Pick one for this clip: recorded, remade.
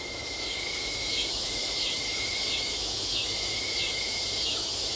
remade